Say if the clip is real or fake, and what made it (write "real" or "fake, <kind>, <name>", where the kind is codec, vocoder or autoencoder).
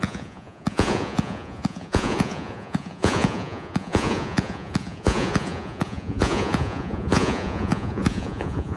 fake, vocoder, Vocos